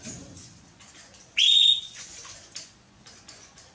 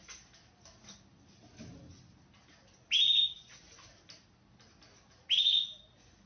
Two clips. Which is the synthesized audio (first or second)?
first